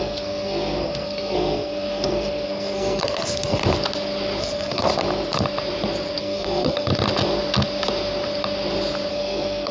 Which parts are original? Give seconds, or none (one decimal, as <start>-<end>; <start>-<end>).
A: 3.6-4.4; 4.9-6.2; 6.9-9.1